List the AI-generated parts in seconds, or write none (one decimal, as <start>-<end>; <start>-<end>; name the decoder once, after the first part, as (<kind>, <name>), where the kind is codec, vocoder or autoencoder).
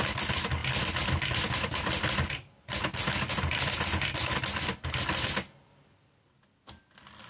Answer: none